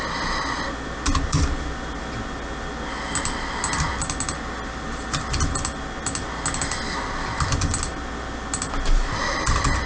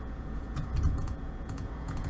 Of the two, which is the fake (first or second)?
second